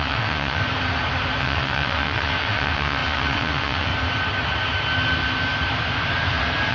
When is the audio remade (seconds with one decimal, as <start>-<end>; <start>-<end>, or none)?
0.0-0.6; 1.4-3.9